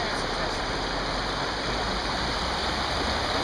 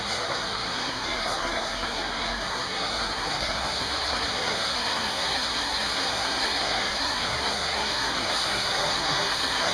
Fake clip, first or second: second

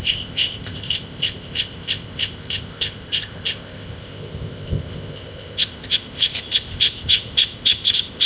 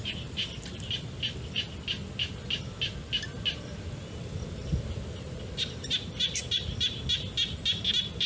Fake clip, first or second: first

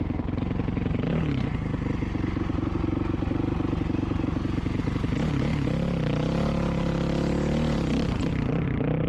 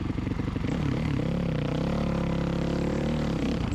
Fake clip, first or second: second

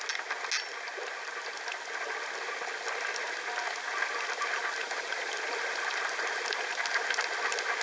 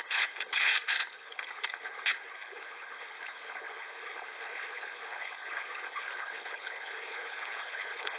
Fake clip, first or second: second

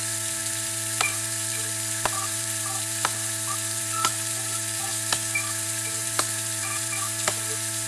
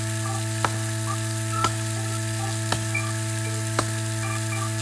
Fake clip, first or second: first